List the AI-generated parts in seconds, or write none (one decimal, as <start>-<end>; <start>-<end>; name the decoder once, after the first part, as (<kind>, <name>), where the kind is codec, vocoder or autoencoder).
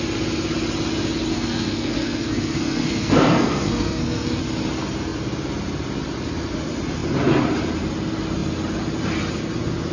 1.3-4.4 (codec, SNAC)